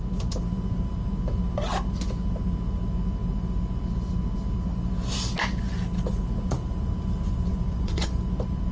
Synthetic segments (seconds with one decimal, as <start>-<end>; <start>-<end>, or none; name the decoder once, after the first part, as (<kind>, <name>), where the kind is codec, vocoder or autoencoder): 7.5-8.2 (vocoder, Vocos)